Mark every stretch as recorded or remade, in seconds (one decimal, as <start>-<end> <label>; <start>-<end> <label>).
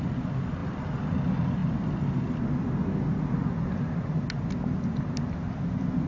0.0-6.1 recorded